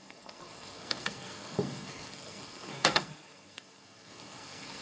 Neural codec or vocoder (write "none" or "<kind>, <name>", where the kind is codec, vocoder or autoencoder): codec, SNAC